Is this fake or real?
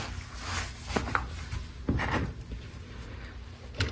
real